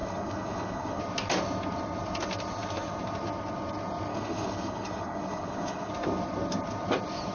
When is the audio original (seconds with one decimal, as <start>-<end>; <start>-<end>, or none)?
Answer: 1.0-4.1; 5.9-7.3